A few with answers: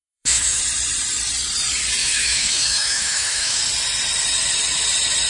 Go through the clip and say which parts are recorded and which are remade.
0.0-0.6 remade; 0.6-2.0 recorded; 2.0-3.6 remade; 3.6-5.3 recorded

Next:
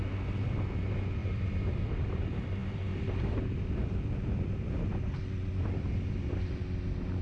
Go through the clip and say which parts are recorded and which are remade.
0.0-1.2 recorded; 1.2-1.9 remade; 1.9-2.6 recorded; 2.6-3.4 remade; 3.4-3.8 recorded; 3.8-5.1 remade; 5.1-5.6 recorded; 5.6-6.6 remade; 6.6-7.2 recorded

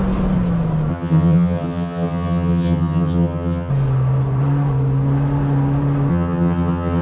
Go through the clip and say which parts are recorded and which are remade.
0.0-0.9 recorded; 0.9-3.7 remade; 3.7-6.1 recorded; 6.1-7.0 remade

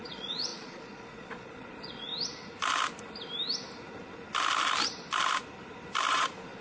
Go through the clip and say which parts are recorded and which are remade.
0.0-2.1 remade; 2.1-6.1 recorded; 6.1-6.6 remade

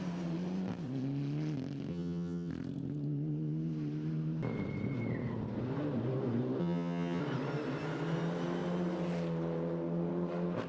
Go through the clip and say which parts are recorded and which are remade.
0.0-1.9 recorded; 1.9-2.5 remade; 2.5-6.6 recorded; 6.6-7.2 remade; 7.2-10.7 recorded

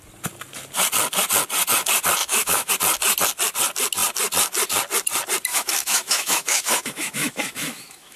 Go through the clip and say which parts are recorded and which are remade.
0.0-2.2 recorded; 2.2-2.7 remade; 2.7-5.5 recorded; 5.5-8.2 remade

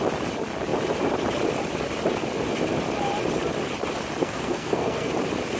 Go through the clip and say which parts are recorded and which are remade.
0.0-4.2 recorded; 4.2-5.1 remade; 5.1-5.6 recorded

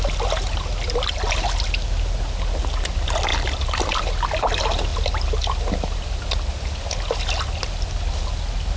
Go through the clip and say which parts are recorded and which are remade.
0.0-8.8 recorded